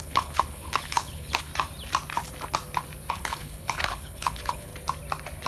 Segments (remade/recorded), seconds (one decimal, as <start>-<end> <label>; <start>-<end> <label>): 0.0-1.5 remade; 1.5-3.1 recorded; 3.1-4.7 remade; 4.7-5.5 recorded